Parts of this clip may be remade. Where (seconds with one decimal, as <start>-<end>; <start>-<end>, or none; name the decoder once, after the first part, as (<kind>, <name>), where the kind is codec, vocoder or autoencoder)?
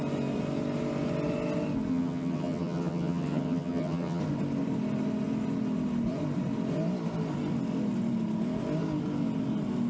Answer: 1.9-4.2 (vocoder, HiFi-GAN)